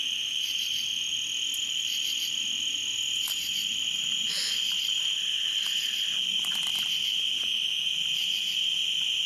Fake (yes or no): no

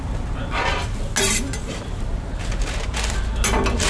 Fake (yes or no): no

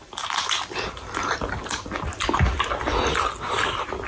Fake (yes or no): no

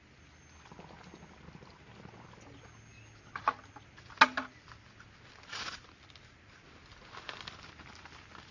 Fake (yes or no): no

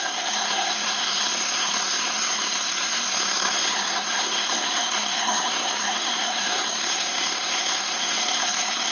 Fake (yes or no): yes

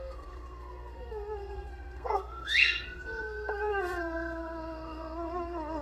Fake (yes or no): yes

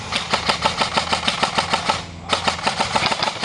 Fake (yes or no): no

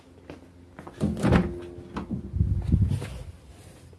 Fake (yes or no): no